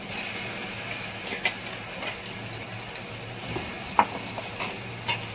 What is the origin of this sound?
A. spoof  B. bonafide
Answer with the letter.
B